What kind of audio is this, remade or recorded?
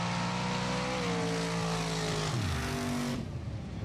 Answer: recorded